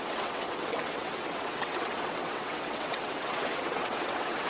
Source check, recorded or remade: remade